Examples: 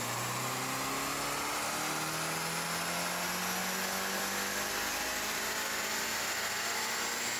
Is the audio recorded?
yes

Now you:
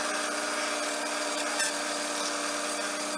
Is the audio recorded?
yes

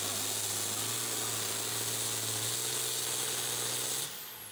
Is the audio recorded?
yes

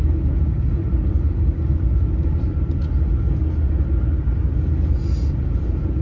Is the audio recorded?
yes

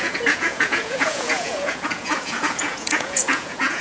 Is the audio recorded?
no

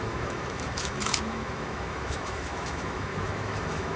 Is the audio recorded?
no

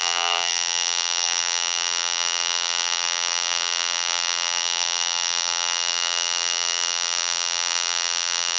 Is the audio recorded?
no